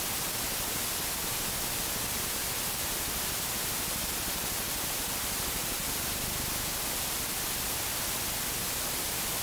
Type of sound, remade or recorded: recorded